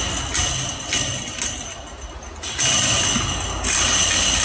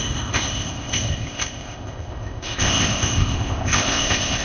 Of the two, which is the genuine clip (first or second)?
first